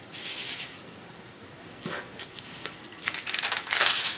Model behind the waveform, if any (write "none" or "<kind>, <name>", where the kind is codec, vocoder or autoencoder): codec, SNAC